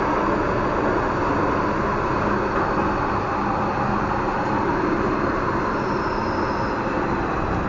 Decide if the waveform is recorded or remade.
recorded